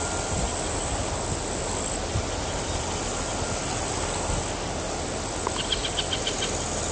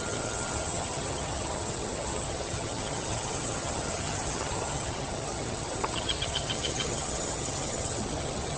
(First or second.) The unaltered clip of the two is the first